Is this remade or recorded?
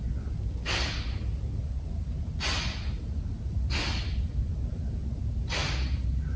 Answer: recorded